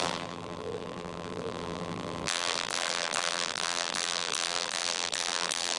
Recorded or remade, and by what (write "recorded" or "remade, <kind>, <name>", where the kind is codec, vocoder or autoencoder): remade, vocoder, BigVGAN v2